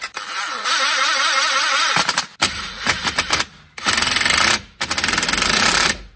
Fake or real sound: real